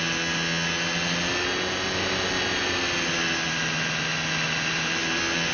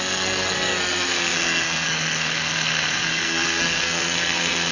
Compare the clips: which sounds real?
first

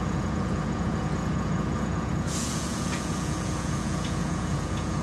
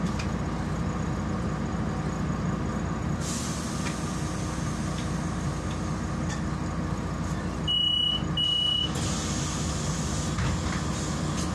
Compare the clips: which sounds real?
second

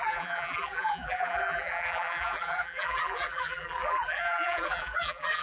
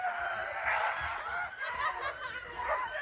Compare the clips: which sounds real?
second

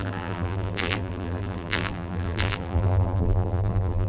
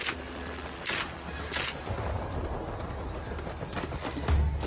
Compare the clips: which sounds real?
second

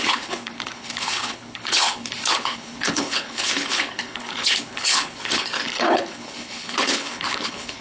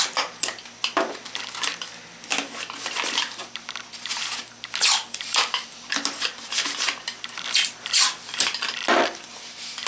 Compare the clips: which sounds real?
second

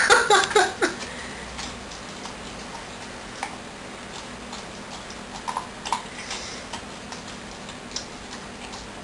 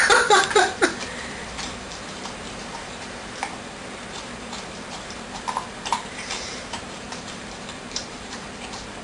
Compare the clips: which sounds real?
first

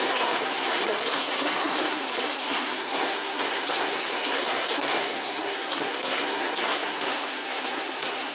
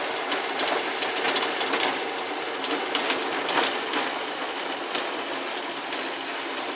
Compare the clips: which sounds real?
second